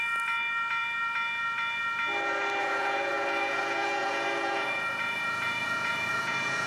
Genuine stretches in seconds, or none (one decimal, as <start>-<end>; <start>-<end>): 0.0-2.6